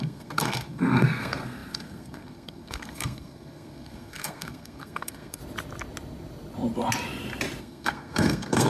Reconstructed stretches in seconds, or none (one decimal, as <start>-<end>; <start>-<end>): 0.0-5.4; 7.6-8.7

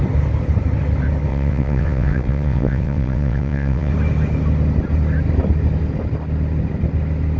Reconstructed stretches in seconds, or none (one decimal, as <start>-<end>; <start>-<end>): 1.3-3.9

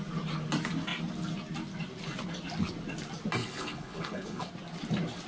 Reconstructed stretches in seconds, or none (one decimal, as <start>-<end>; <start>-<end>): 3.4-4.5

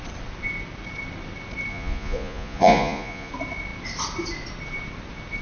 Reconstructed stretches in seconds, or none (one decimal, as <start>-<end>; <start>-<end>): 1.7-3.3